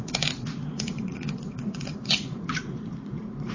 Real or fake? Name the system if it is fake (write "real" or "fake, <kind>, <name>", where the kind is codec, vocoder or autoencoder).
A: fake, vocoder, Vocos